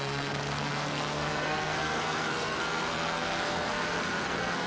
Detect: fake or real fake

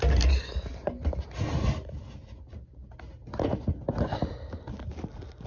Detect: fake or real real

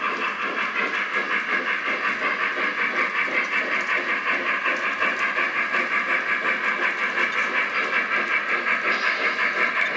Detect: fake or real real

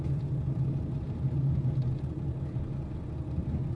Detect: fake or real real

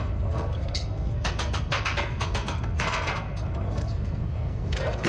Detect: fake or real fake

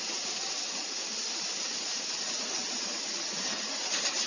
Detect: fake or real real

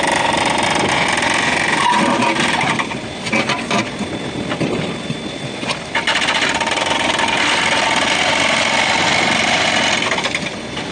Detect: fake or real real